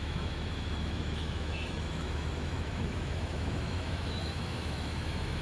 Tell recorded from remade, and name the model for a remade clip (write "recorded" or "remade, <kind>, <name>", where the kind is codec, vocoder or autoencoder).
remade, autoencoder, DAC-VAE